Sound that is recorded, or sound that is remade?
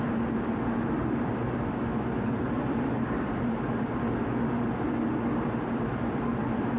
remade